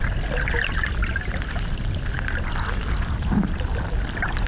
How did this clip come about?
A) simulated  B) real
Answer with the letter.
B